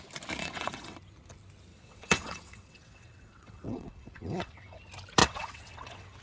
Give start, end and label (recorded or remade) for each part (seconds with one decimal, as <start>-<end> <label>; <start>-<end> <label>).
0.0-0.4 recorded; 0.4-1.0 remade; 1.0-1.7 recorded; 1.7-4.8 remade; 4.8-5.2 recorded; 5.2-6.2 remade